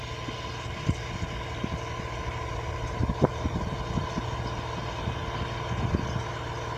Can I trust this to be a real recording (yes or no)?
yes